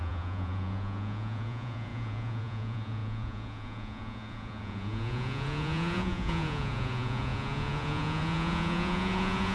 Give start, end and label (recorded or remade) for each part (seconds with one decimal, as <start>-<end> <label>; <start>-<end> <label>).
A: 0.0-9.5 remade